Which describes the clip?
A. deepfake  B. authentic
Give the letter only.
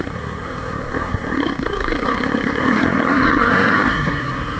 A